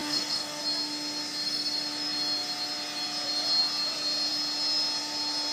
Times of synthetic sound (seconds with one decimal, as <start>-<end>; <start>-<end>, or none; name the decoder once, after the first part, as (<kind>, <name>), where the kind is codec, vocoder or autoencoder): 0.0-0.6 (codec, DAC)